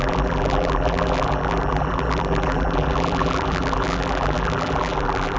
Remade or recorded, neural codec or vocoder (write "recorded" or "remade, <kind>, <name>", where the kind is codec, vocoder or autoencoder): remade, vocoder, BigVGAN v2